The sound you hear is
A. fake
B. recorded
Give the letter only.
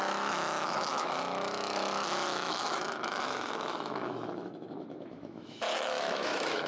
A